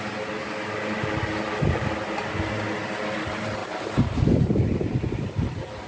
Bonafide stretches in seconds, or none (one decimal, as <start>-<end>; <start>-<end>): 0.0-3.6; 5.3-5.9